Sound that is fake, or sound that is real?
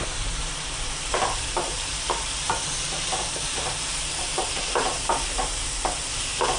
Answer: fake